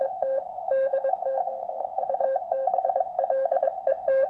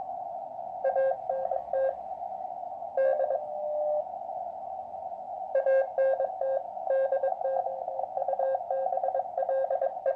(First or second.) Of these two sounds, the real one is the second